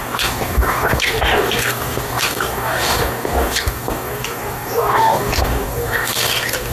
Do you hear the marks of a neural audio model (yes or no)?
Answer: yes